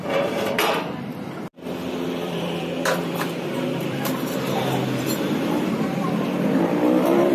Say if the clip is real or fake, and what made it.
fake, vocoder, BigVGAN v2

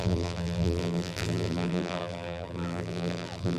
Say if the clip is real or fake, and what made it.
fake, vocoder, BigVGAN v2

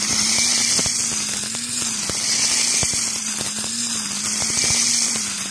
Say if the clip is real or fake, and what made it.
fake, vocoder, BigVGAN v2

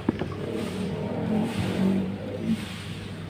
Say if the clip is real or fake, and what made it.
fake, vocoder, BigVGAN v2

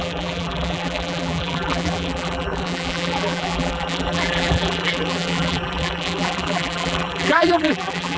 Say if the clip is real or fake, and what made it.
fake, vocoder, BigVGAN v2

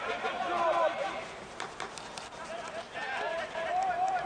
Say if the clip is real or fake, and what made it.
fake, vocoder, BigVGAN v2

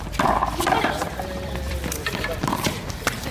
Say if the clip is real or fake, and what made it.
fake, vocoder, BigVGAN v2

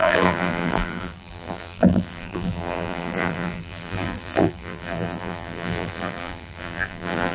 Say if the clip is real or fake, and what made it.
fake, vocoder, BigVGAN v2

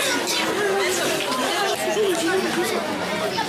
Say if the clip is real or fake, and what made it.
real